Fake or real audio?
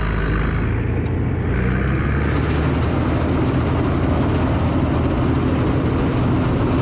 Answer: real